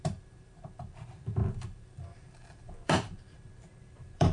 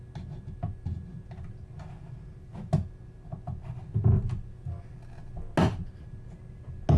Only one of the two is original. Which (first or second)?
second